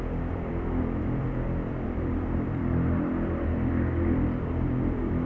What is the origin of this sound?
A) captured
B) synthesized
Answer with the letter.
B